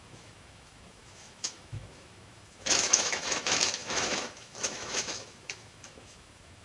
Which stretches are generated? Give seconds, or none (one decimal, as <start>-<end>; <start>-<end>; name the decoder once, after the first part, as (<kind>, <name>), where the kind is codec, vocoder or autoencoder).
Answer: 0.0-6.6 (autoencoder, DAC-VAE)